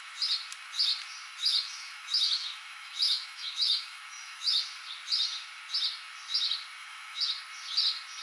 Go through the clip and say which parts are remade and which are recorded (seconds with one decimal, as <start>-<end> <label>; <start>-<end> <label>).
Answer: 0.0-1.4 recorded; 1.4-4.6 remade; 4.6-6.8 recorded; 6.8-7.3 remade; 7.3-8.2 recorded